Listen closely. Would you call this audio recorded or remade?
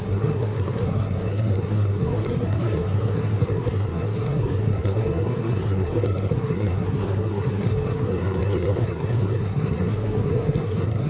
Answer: remade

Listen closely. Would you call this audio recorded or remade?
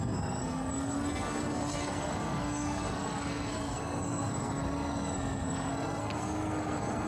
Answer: remade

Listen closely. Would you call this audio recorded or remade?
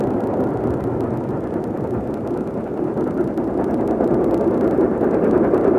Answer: recorded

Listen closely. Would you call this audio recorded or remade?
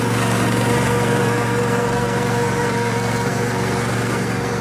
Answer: remade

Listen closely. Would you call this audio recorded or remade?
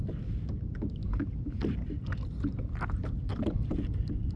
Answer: recorded